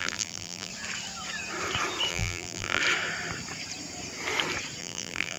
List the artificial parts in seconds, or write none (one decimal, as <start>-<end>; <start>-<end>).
0.0-0.7; 2.1-2.8; 4.8-5.4